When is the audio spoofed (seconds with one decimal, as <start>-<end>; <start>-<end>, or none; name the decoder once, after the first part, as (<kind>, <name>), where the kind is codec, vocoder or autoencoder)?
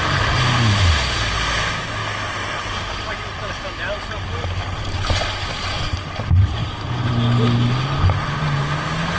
none